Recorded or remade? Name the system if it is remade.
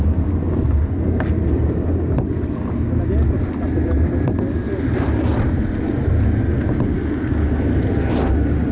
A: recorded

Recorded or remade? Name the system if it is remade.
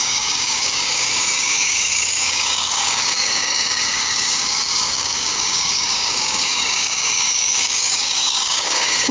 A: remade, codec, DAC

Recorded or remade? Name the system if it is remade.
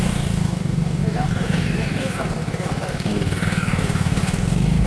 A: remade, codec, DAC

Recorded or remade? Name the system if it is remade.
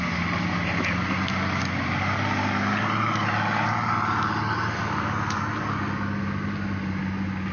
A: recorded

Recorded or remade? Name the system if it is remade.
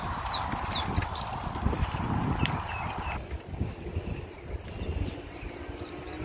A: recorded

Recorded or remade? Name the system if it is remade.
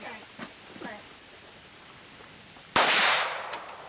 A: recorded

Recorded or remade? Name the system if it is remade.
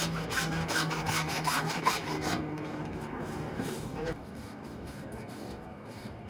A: remade, codec, DAC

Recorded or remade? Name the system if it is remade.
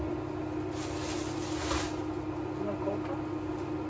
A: recorded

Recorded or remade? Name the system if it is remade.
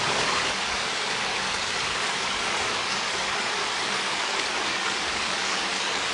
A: remade, codec, DAC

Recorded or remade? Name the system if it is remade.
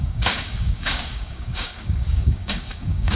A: remade, codec, DAC